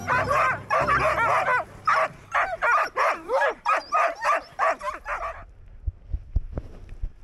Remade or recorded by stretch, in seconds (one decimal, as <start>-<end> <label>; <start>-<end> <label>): 0.0-2.6 recorded; 2.6-4.3 remade; 4.3-7.2 recorded